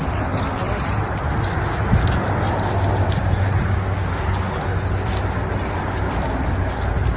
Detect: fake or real real